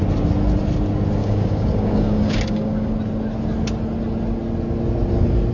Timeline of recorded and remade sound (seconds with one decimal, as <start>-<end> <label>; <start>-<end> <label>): 0.0-1.2 recorded; 1.2-2.9 remade; 2.9-5.5 recorded